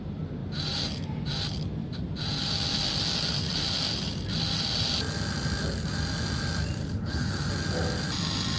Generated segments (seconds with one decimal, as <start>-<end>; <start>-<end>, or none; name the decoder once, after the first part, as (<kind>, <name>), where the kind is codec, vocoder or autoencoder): 6.8-7.5 (codec, HILCodec)